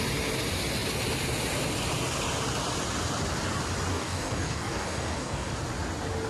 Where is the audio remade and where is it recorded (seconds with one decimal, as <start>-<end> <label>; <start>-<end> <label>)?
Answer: 0.0-3.9 recorded; 3.9-5.5 remade; 5.5-6.3 recorded